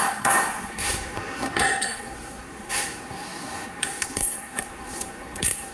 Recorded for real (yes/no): no